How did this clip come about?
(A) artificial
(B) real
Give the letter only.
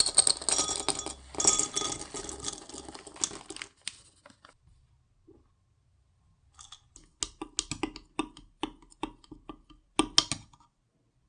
B